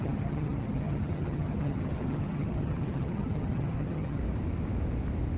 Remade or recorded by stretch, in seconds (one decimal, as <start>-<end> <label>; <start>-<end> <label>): 0.0-4.2 remade; 4.2-5.4 recorded